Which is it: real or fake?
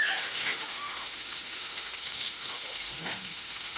fake